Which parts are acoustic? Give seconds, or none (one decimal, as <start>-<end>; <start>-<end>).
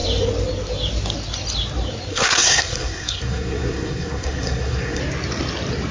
0.0-2.1; 5.0-5.9